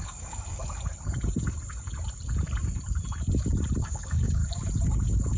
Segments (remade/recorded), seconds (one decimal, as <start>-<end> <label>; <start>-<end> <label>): 0.0-0.6 remade; 0.6-3.8 recorded; 3.8-4.4 remade; 4.4-5.4 recorded